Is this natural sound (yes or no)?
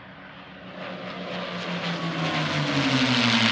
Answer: yes